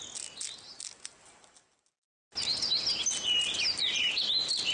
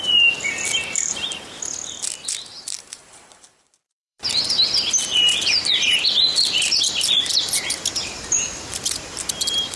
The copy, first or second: second